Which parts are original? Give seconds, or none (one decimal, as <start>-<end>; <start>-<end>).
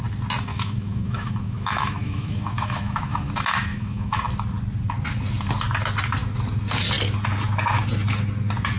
0.0-0.5; 3.3-3.7; 4.2-8.8